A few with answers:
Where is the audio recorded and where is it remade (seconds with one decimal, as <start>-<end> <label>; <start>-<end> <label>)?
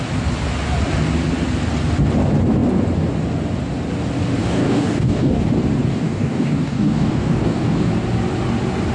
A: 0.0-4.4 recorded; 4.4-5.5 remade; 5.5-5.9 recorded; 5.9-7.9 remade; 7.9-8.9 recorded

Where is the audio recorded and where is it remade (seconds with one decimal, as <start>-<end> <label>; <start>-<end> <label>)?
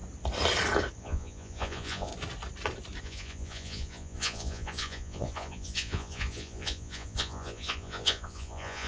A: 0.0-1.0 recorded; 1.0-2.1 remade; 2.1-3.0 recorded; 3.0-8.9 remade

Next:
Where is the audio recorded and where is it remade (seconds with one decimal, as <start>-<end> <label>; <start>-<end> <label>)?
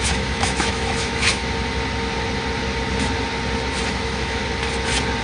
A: 0.0-1.4 remade; 1.4-3.9 recorded; 3.9-4.4 remade; 4.4-5.2 recorded